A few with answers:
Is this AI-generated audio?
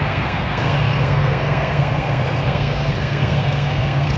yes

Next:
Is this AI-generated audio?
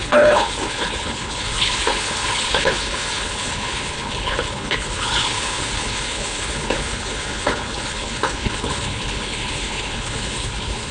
yes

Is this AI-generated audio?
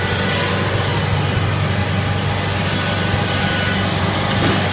no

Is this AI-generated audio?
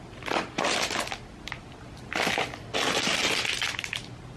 no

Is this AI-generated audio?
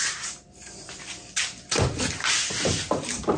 yes